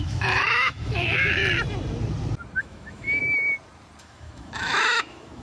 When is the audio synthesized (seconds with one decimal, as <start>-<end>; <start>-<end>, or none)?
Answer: 0.0-1.4; 2.6-3.2; 4.0-5.4